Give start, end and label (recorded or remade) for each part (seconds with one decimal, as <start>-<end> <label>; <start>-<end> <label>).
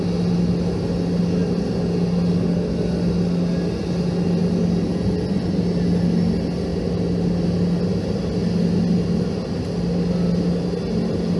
0.0-11.4 recorded